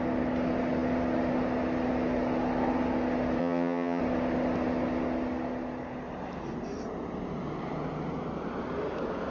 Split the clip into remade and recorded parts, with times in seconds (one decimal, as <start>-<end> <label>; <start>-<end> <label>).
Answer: 0.0-3.4 recorded; 3.4-4.0 remade; 4.0-9.3 recorded